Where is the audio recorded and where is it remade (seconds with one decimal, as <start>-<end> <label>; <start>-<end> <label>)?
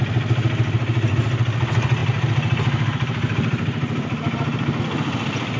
0.0-2.0 recorded; 2.0-4.8 remade; 4.8-5.6 recorded